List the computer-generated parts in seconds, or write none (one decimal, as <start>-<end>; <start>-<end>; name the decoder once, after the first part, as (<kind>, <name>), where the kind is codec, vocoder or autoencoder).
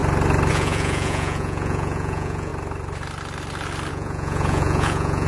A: 0.5-2.5 (vocoder, Vocos); 3.9-5.3